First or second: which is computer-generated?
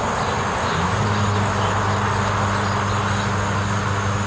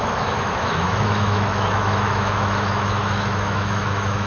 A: second